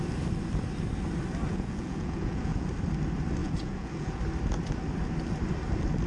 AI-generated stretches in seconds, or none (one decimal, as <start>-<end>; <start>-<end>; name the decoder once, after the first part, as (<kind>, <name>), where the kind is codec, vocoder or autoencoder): 1.5-2.7 (vocoder, Vocos); 3.4-4.2